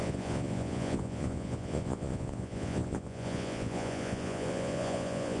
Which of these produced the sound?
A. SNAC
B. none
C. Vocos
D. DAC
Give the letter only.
C